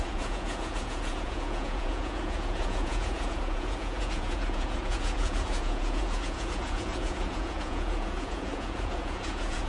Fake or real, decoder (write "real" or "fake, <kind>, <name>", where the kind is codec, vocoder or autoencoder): fake, vocoder, Vocos